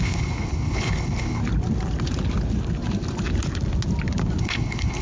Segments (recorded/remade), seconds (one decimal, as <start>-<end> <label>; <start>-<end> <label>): 0.0-1.4 remade; 1.4-4.4 recorded; 4.4-5.0 remade